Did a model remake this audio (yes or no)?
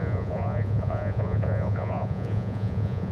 yes